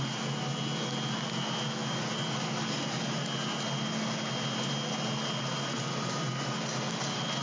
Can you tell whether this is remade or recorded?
recorded